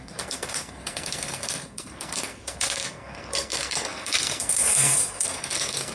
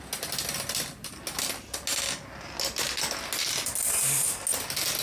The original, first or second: second